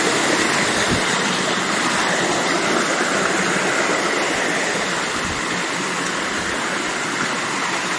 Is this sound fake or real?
real